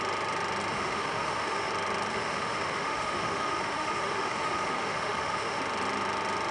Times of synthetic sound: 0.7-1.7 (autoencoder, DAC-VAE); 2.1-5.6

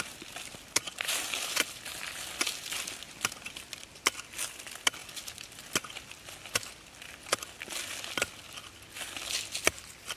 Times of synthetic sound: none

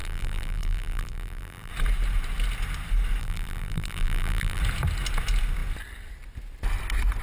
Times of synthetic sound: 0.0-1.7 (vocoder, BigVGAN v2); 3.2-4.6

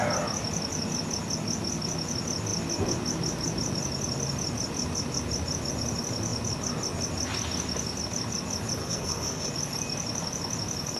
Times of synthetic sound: 8.8-9.5 (codec, SNAC)